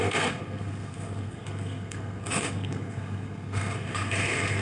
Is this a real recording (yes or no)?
no